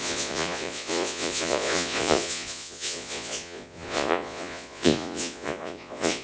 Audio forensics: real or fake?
fake